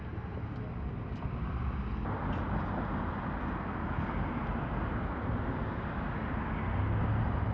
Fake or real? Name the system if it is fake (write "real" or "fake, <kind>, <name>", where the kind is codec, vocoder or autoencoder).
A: real